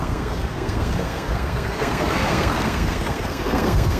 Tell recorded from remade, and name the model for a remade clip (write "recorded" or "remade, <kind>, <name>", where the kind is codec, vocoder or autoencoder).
remade, codec, SNAC